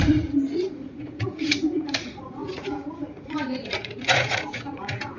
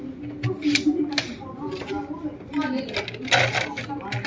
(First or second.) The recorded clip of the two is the second